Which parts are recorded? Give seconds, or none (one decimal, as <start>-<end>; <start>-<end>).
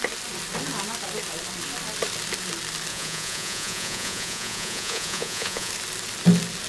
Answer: 0.0-2.9; 5.7-6.7